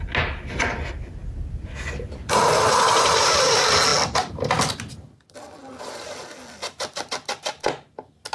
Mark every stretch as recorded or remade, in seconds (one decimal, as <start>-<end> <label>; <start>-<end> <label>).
0.0-8.3 recorded